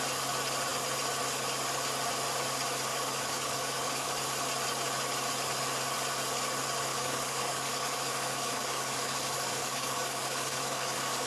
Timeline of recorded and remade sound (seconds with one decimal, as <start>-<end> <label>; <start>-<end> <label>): 0.0-2.9 recorded; 2.9-4.2 remade; 4.2-6.9 recorded; 6.9-11.3 remade